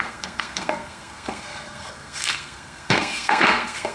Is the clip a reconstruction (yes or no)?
yes